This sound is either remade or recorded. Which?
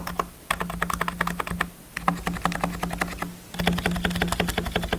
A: recorded